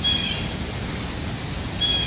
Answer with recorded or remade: recorded